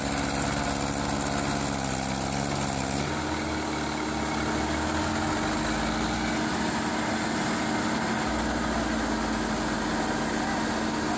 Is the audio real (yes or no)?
yes